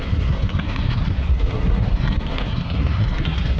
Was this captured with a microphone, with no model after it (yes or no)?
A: no